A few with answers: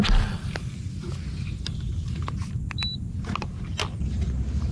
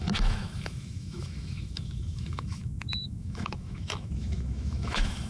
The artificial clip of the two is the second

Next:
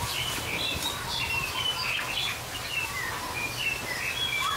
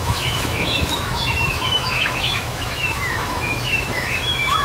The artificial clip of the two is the second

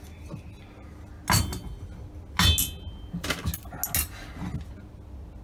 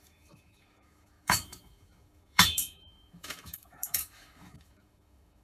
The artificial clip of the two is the second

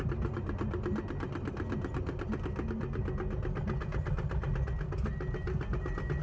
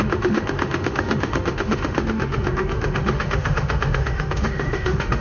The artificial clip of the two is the second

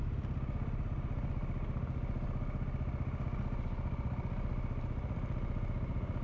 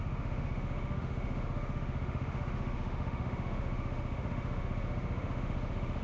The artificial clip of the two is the second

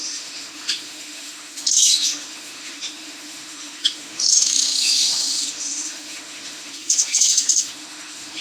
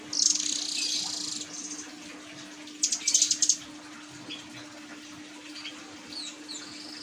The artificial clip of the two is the first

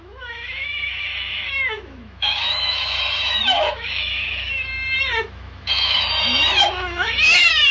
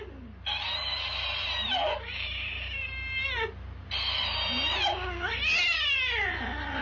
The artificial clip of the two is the first